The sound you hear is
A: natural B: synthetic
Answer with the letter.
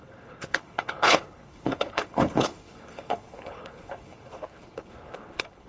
B